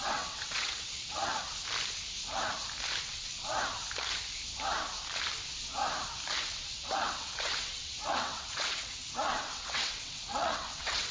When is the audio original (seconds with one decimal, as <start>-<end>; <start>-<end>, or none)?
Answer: 1.3-3.0; 3.4-6.4